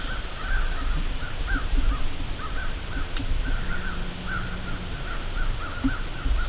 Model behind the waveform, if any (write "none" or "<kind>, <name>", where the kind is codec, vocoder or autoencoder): none